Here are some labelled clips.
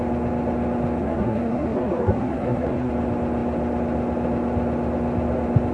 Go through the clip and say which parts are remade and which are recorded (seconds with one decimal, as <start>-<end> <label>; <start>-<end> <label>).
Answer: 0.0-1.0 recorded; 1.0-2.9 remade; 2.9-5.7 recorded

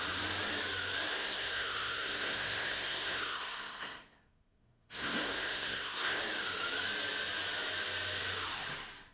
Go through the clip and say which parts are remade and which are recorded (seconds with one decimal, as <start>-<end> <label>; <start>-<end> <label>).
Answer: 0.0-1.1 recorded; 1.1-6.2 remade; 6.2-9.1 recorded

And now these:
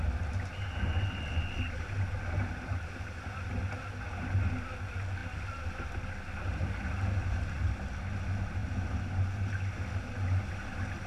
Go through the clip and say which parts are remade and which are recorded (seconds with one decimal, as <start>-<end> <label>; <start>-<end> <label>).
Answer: 0.0-11.1 recorded